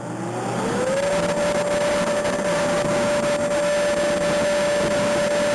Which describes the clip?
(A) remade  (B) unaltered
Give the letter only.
B